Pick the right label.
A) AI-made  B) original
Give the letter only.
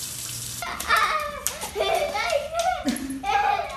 B